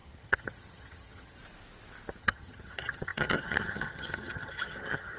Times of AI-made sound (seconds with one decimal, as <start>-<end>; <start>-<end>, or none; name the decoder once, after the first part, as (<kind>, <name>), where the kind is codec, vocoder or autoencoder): 0.0-1.4 (vocoder, HiFi-GAN); 2.2-5.2

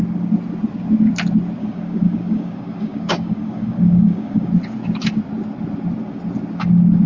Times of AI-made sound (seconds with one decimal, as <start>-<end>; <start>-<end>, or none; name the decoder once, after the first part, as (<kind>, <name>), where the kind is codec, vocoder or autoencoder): 1.6-4.5 (codec, DAC)

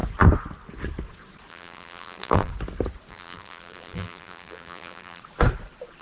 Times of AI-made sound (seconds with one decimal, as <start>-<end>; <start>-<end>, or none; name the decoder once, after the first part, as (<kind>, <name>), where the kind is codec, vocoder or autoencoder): 1.5-2.5 (vocoder, BigVGAN v2); 3.1-5.2